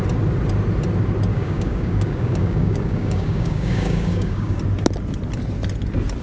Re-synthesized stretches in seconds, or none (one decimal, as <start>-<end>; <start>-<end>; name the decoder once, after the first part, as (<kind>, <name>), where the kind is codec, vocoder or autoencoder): 1.3-4.6 (codec, DAC)